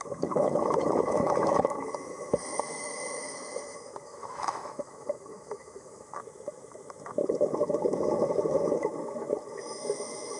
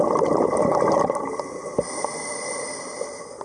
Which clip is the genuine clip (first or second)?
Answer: second